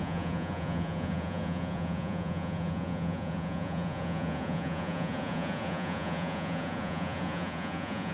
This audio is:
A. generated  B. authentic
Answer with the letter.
A